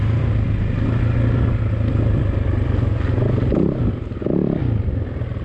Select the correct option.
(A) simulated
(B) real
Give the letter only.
B